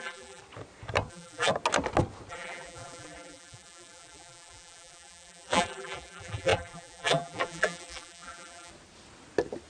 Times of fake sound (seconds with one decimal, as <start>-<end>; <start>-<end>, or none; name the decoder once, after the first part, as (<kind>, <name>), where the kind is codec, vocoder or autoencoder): 0.0-0.4 (vocoder, BigVGAN v2); 1.1-1.5; 2.3-8.7